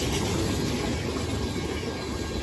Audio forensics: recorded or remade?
recorded